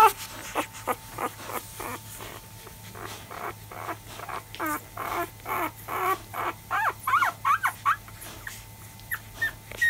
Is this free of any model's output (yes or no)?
yes